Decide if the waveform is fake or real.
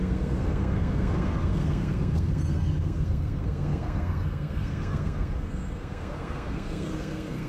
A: fake